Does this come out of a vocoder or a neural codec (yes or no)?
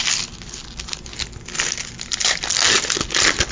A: no